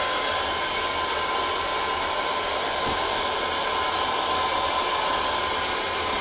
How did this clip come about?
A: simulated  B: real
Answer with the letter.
B